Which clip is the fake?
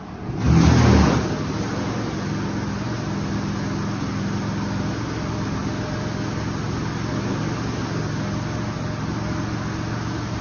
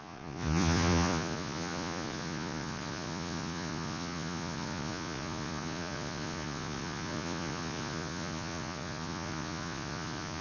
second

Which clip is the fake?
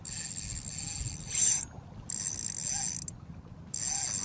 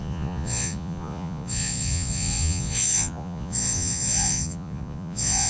second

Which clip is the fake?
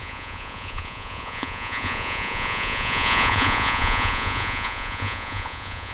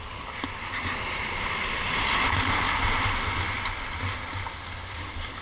first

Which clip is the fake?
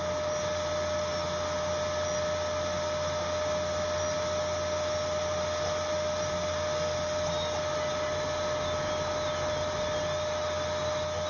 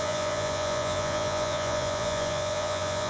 second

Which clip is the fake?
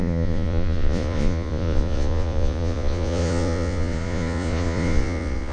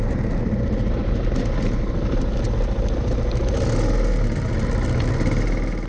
first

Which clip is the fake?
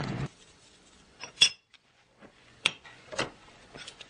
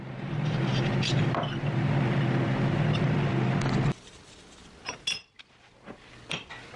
first